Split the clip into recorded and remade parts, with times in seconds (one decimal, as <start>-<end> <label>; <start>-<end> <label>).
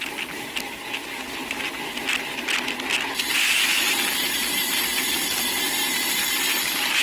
0.0-7.0 recorded